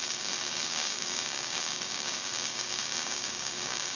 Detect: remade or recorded remade